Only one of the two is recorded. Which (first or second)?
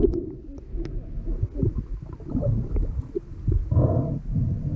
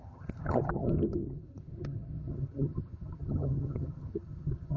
first